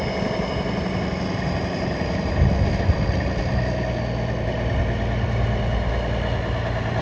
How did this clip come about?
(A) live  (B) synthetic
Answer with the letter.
A